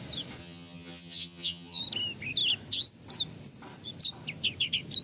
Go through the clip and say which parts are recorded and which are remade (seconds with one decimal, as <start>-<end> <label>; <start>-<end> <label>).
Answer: 0.0-0.4 recorded; 0.4-1.8 remade; 1.8-5.0 recorded